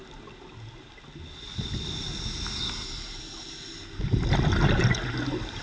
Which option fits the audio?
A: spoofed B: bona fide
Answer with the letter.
B